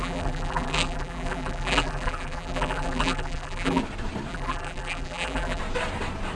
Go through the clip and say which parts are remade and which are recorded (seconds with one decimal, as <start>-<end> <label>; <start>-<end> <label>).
0.0-3.8 remade; 3.8-4.3 recorded; 4.3-5.6 remade; 5.6-6.4 recorded

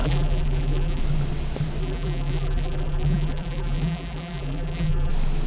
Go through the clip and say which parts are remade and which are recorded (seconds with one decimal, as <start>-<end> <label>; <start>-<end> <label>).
0.0-1.0 remade; 1.0-1.8 recorded; 1.8-5.1 remade; 5.1-5.5 recorded